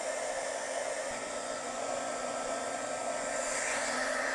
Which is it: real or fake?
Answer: fake